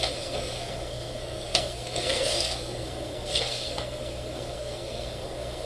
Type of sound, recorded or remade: remade